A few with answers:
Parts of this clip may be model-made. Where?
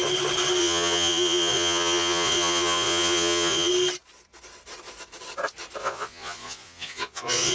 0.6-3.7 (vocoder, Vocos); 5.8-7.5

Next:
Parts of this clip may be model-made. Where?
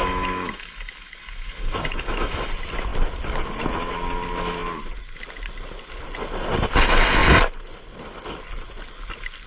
0.0-2.5 (autoencoder, DAC-VAE)